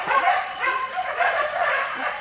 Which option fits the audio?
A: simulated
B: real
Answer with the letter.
A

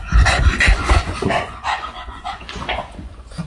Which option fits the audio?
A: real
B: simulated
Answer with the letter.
B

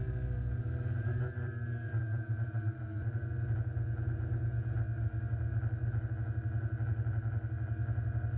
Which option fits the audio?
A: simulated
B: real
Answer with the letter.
B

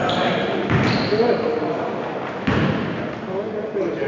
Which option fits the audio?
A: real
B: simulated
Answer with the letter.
A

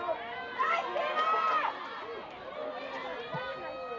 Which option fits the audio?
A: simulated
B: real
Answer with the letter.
B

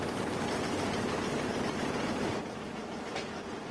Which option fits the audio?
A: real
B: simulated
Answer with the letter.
A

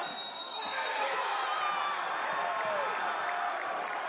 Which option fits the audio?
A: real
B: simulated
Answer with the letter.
A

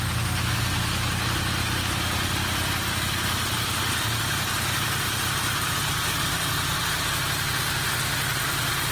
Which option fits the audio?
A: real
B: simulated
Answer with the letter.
A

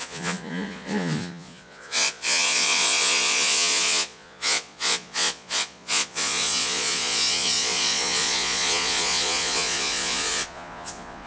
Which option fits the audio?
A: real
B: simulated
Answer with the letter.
B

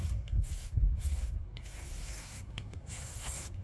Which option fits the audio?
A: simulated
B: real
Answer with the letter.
A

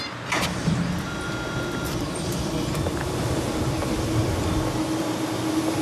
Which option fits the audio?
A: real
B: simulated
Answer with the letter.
B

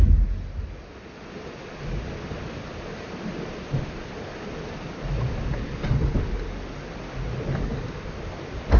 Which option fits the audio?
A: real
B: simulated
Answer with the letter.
A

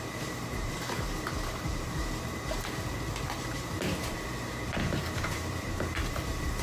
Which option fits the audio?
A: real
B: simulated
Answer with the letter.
B